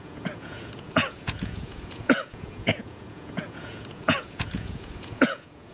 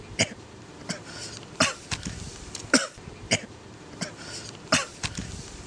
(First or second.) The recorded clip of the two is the second